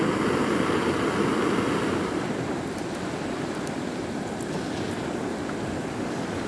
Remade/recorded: recorded